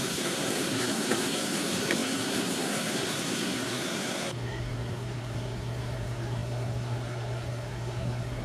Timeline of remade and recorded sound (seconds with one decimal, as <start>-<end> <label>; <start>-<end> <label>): 0.0-8.4 remade